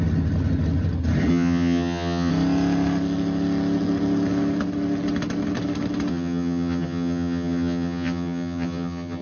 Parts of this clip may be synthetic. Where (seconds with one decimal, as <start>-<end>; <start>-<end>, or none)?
1.3-2.3; 6.1-9.2